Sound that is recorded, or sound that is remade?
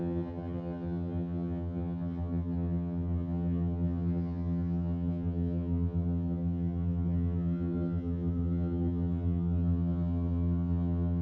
remade